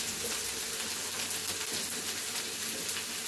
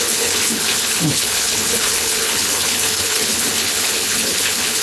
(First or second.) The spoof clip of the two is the second